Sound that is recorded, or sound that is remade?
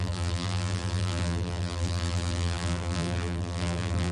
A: remade